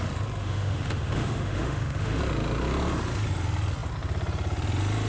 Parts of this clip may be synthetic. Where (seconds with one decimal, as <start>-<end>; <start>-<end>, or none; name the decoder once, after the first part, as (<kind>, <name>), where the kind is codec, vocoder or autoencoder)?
0.4-2.2 (autoencoder, DAC-VAE)